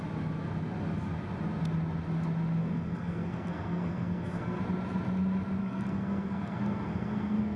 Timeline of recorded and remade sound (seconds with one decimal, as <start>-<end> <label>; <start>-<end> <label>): 0.0-2.6 recorded; 2.6-4.6 remade; 4.6-5.6 recorded; 5.6-7.6 remade